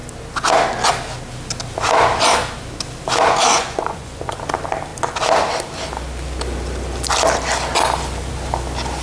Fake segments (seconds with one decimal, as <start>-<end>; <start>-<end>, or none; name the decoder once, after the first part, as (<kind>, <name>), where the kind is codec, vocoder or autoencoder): 3.5-4.4 (vocoder, Vocos)